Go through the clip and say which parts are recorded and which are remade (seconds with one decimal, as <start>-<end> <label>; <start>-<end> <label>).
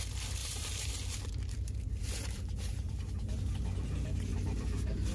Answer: 0.0-0.4 recorded; 0.4-3.5 remade; 3.5-4.3 recorded; 4.3-5.1 remade